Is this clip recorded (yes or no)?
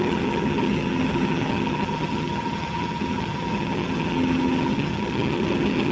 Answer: no